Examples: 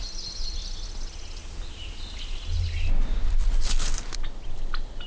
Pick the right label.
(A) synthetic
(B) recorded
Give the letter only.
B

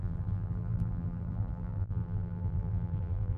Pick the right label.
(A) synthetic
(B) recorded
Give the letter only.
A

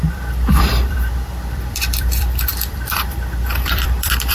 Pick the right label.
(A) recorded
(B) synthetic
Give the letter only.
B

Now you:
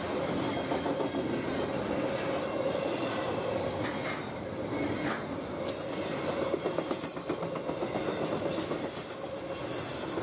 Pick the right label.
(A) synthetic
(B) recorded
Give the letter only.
B